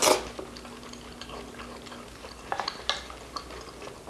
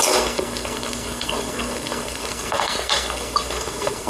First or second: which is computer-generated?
second